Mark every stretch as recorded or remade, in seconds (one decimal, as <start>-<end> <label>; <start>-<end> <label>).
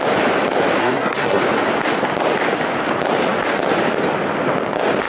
0.0-0.8 recorded; 0.8-1.4 remade; 1.4-5.1 recorded